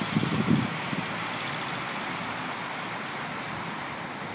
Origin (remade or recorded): recorded